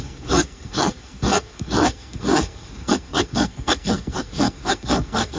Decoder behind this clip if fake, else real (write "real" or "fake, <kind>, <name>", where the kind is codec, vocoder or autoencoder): fake, codec, SNAC